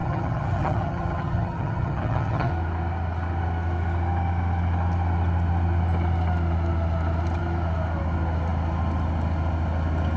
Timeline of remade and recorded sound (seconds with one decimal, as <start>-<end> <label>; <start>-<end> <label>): 0.0-2.5 remade; 2.5-10.2 recorded